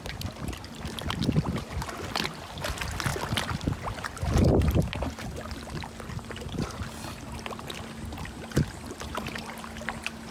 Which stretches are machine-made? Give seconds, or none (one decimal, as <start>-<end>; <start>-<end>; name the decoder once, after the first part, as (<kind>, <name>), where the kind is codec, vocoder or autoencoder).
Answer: none